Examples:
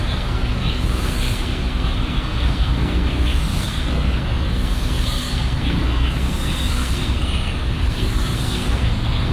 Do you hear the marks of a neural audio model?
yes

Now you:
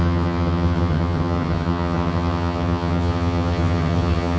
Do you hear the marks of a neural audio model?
yes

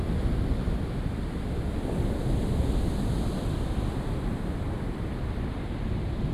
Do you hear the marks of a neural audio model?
no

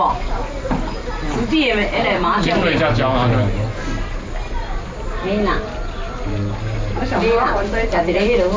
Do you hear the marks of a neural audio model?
no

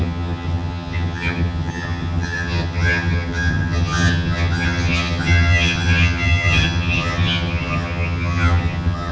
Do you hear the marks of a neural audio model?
yes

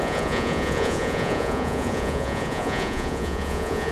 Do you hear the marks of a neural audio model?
yes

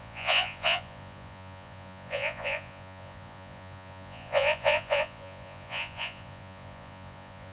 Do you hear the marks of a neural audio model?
yes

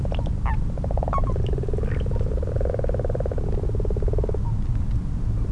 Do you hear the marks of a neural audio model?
no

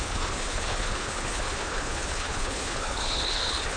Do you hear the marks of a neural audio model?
yes